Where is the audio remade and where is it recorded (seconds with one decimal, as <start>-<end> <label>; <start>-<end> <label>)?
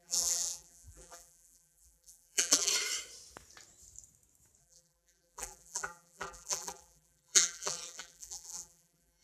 0.0-2.7 remade; 2.7-4.6 recorded; 4.6-9.2 remade